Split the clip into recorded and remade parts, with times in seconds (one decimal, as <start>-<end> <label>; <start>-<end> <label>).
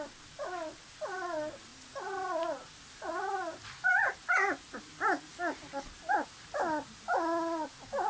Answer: 0.0-8.1 recorded